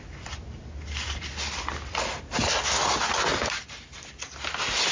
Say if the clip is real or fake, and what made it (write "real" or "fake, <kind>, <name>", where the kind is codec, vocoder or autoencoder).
real